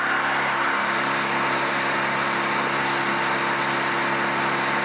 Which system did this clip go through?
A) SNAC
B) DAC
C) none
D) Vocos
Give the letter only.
C